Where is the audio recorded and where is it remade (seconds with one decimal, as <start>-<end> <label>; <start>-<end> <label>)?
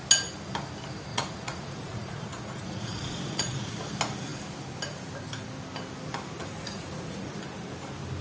0.0-1.1 recorded; 1.1-3.9 remade; 3.9-6.4 recorded; 6.4-7.4 remade; 7.4-8.2 recorded